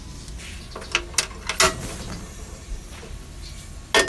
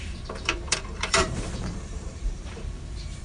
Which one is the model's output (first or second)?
second